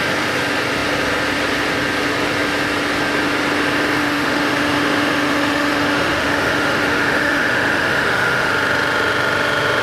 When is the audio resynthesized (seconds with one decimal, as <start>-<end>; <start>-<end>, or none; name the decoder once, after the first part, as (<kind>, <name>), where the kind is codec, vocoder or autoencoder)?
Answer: 4.0-8.5 (autoencoder, DAC-VAE)